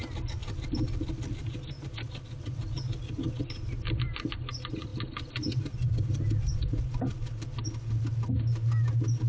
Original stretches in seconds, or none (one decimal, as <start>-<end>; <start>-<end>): 0.0-9.3